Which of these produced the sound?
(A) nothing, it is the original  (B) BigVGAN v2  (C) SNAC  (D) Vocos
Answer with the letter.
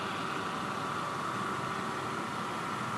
A